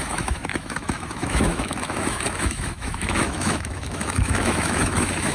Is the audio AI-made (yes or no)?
yes